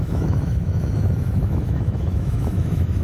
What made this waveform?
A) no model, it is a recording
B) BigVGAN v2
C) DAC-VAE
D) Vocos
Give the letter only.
C